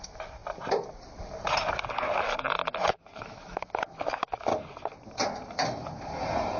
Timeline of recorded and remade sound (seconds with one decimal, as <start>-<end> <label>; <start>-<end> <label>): 0.0-0.4 remade; 0.4-3.2 recorded; 3.2-4.5 remade; 4.5-6.6 recorded